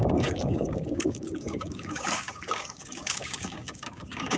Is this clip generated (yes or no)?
yes